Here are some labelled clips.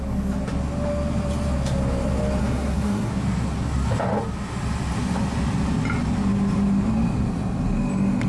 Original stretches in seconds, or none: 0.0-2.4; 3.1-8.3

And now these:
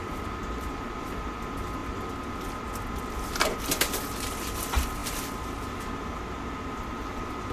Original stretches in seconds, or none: 0.0-7.5

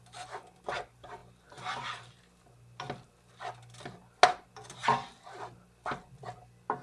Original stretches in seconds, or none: 0.0-6.8

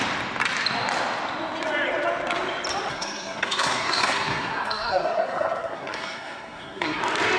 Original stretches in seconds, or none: 0.0-2.9; 7.0-7.4

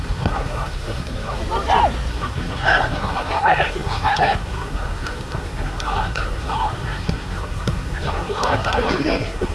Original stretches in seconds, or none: 1.4-2.1

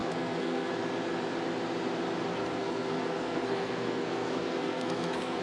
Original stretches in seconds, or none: 0.7-2.3